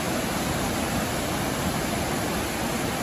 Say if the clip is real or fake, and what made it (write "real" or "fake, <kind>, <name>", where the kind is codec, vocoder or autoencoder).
real